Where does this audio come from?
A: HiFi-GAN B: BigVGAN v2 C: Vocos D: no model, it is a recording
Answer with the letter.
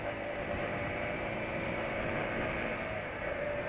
B